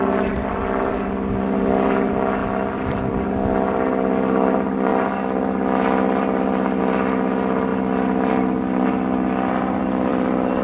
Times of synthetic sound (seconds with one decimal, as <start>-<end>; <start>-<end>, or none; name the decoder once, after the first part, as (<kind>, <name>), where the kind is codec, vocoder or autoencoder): none